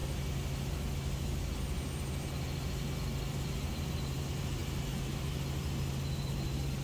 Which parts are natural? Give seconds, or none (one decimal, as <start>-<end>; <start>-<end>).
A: 0.0-6.8